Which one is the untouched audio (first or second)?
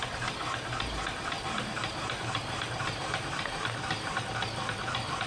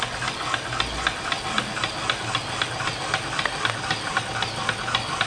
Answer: second